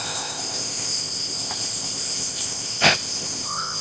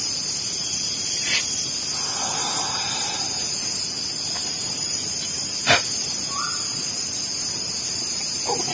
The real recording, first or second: second